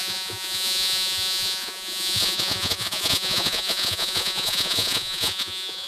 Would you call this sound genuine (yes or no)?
no